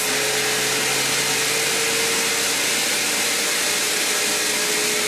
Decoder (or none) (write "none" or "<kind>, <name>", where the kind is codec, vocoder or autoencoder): none